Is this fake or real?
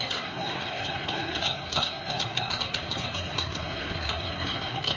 fake